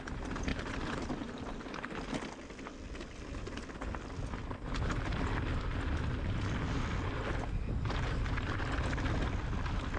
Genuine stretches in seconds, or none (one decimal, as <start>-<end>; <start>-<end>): 0.0-10.0